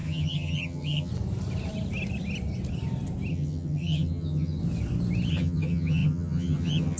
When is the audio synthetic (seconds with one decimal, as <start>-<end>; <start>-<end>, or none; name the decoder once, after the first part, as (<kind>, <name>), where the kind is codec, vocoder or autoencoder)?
0.0-1.1 (vocoder, HiFi-GAN); 3.3-4.6; 5.3-7.0